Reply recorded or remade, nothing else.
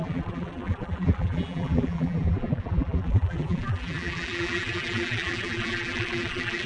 remade